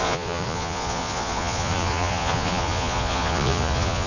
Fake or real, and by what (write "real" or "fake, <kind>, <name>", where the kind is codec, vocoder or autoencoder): fake, vocoder, Vocos